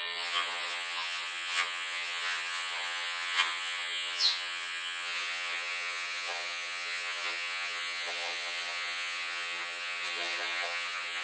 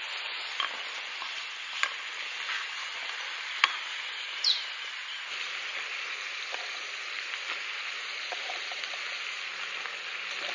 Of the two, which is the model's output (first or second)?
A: first